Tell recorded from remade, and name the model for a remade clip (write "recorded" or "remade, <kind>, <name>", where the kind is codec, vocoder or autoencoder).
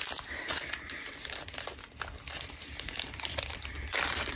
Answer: remade, vocoder, BigVGAN v2